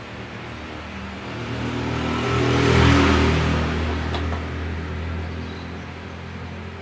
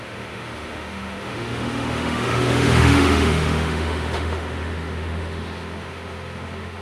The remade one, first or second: second